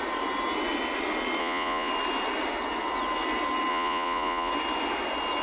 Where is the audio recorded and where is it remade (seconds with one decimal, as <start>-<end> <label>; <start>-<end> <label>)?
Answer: 0.0-1.4 recorded; 1.4-1.9 remade; 1.9-3.7 recorded; 3.7-4.5 remade; 4.5-5.4 recorded